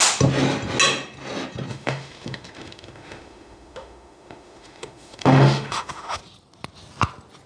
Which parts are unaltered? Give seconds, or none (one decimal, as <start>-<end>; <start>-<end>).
0.0-1.7; 6.2-7.5